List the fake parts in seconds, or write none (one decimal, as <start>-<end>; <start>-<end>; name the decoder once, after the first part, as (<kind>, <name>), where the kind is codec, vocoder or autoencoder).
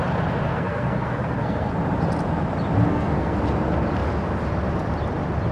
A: 0.5-1.7 (codec, SNAC); 2.9-3.4